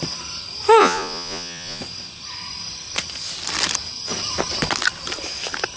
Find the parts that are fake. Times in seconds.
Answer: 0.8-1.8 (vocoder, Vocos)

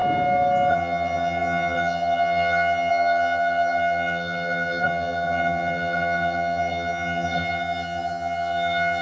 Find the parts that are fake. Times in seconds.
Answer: 0.7-9.0 (vocoder, HiFi-GAN)

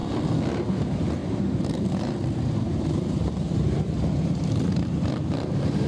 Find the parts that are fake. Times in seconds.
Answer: 0.5-5.9 (vocoder, BigVGAN v2)

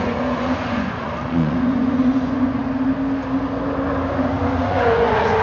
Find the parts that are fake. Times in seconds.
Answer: 0.0-2.6 (vocoder, Vocos); 4.6-5.4

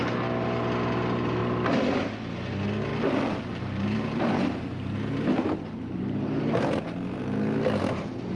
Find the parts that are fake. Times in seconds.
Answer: 2.9-6.8 (vocoder, BigVGAN v2)

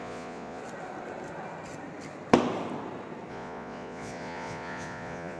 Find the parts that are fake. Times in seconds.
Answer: 0.0-0.6 (vocoder, Vocos); 3.3-5.4

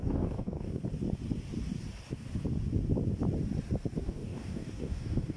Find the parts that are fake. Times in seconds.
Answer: 0.0-0.8 (codec, DAC); 4.0-5.4